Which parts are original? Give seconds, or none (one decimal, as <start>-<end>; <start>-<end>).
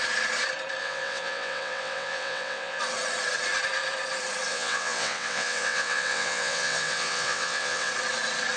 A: 0.0-0.8; 2.8-4.5; 7.9-8.6